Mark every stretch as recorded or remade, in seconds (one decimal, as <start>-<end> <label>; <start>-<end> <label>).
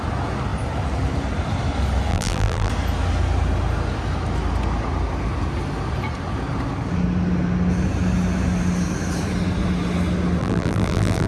0.0-2.1 recorded; 2.1-2.7 remade; 2.7-10.4 recorded; 10.4-11.3 remade